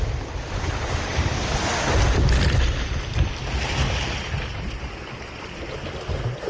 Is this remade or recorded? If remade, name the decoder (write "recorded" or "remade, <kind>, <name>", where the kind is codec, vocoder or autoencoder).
recorded